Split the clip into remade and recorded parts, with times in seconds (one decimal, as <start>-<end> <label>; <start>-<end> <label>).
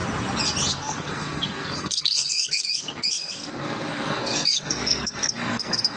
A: 0.0-0.7 recorded; 0.7-6.0 remade